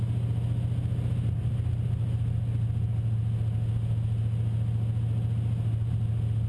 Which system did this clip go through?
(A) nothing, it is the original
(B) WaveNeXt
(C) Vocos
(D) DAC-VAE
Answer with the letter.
A